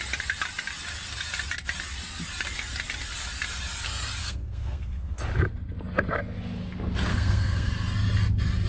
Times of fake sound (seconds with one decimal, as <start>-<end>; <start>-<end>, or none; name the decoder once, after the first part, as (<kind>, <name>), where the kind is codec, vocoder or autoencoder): 4.2-5.2 (codec, SNAC); 7.1-7.7